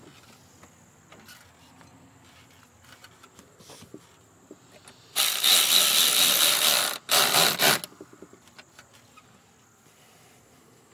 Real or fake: real